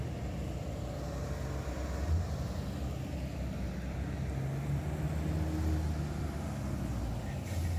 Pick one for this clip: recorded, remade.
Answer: recorded